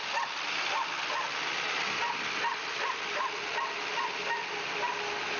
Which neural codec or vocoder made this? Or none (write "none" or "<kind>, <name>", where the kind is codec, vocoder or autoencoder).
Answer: none